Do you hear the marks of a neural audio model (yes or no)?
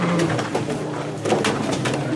yes